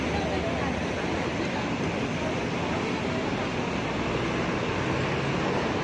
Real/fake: real